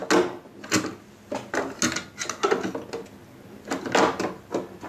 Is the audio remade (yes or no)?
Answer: no